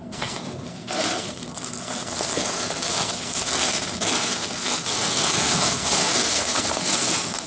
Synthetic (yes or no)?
yes